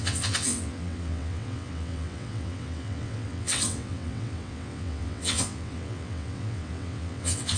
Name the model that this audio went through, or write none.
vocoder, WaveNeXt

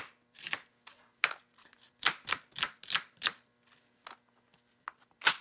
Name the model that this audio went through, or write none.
none